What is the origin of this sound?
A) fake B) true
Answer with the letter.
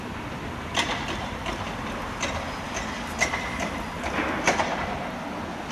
B